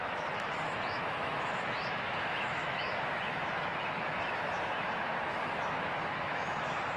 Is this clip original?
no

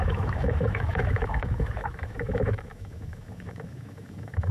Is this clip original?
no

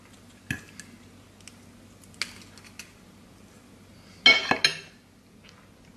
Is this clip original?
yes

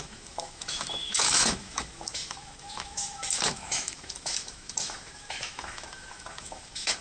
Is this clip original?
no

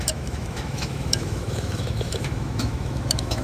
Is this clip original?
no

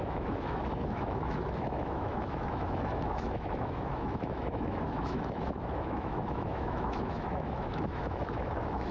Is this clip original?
no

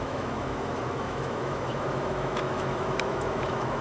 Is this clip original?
no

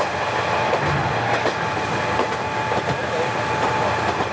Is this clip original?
yes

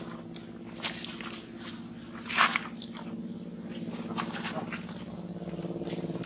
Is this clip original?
yes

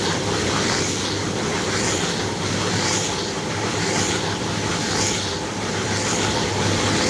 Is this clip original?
yes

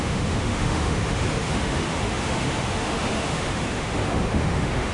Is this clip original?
no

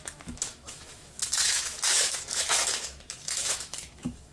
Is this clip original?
no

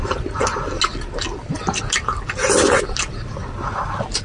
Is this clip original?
yes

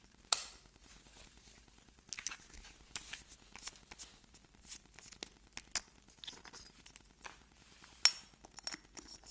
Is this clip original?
yes